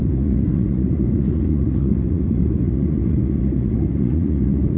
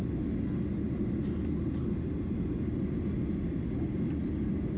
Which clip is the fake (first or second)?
first